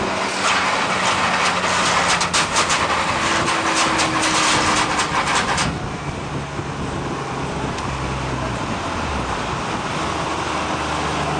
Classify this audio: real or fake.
real